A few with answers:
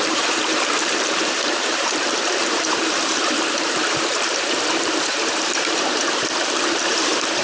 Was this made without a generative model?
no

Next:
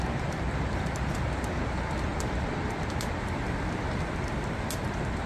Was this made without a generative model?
yes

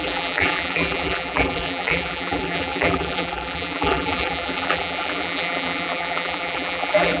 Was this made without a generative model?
no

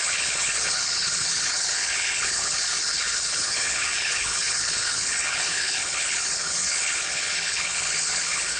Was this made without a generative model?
no